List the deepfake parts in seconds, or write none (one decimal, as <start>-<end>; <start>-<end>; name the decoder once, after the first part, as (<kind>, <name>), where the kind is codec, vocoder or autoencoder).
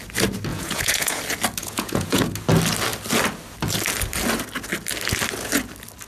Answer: 0.5-1.2 (vocoder, Vocos); 1.6-2.2